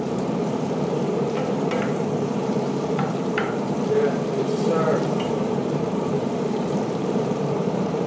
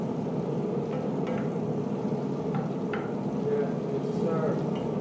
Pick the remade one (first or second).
first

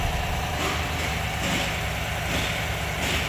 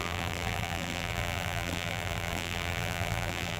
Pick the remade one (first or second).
second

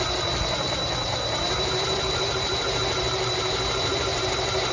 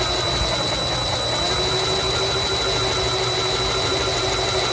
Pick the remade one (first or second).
first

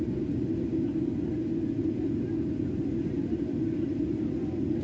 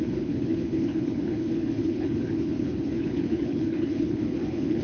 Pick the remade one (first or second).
second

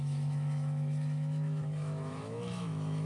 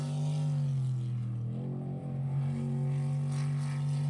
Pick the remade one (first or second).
first